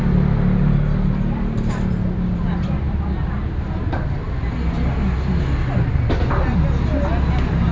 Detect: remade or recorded recorded